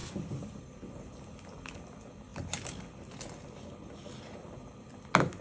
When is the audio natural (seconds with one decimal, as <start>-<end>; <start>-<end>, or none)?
0.0-5.4